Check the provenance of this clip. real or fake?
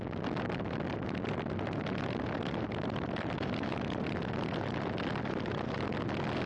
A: real